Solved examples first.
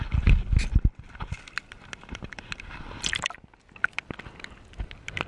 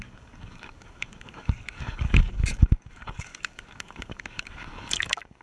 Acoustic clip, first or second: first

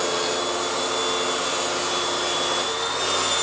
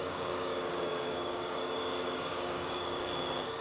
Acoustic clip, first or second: first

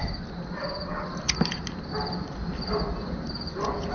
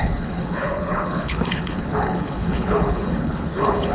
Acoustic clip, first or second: first